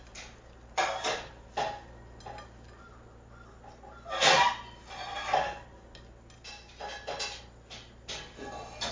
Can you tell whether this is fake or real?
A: real